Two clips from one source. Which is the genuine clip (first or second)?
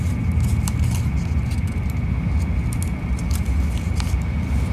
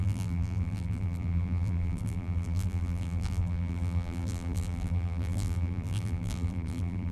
first